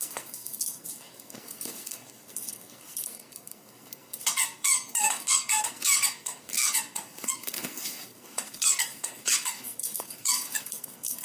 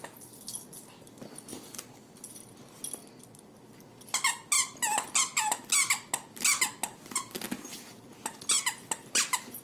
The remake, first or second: first